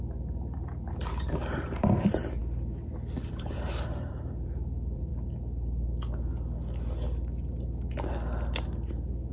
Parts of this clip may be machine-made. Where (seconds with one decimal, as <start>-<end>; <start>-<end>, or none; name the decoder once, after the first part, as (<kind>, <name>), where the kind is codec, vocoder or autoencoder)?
0.0-2.4 (vocoder, BigVGAN v2); 3.3-5.1